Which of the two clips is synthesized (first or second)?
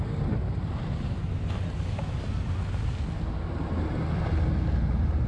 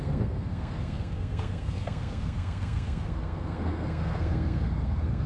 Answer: second